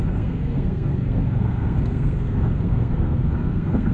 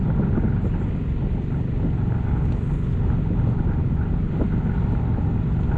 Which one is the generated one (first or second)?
first